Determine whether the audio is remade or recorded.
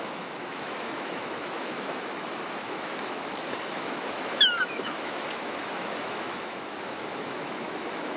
remade